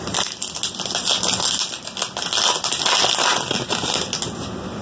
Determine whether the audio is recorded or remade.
recorded